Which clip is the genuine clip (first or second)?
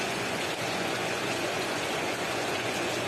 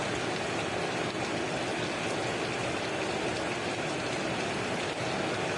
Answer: second